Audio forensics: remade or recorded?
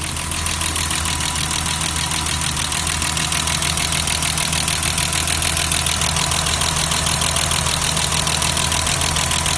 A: recorded